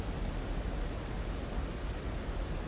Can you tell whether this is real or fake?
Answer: real